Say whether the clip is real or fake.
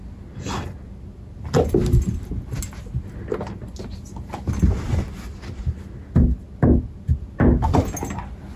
real